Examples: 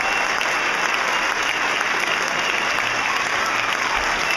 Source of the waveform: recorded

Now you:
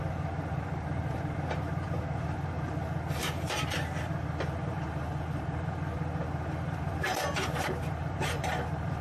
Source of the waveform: remade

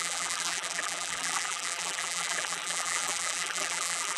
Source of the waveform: remade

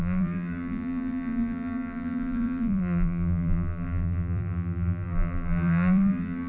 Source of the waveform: remade